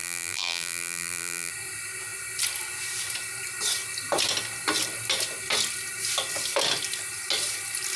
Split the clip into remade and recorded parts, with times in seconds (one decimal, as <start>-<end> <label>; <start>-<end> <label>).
0.0-1.5 remade; 1.5-8.0 recorded